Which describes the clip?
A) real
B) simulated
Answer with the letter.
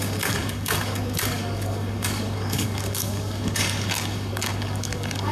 B